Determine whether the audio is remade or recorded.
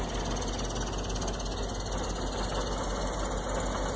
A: recorded